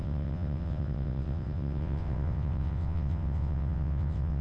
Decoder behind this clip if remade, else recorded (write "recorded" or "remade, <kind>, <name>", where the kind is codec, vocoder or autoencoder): remade, vocoder, WaveNeXt